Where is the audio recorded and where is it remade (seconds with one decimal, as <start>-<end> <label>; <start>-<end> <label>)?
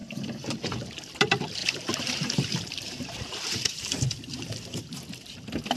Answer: 0.0-0.8 remade; 0.8-1.6 recorded; 1.6-4.0 remade; 4.0-5.8 recorded